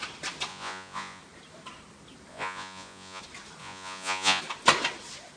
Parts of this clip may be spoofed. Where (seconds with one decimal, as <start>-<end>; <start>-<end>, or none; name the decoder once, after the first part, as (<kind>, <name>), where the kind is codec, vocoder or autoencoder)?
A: 0.5-1.2 (vocoder, Vocos); 2.3-3.2; 3.6-4.4